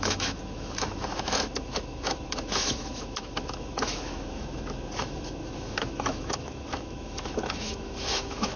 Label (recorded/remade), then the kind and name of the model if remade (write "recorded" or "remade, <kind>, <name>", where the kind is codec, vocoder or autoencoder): remade, autoencoder, DAC-VAE